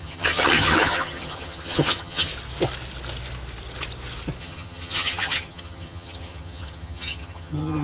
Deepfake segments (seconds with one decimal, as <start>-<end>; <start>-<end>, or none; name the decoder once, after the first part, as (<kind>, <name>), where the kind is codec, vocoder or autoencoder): 0.0-2.3 (vocoder, HiFi-GAN); 4.4-7.8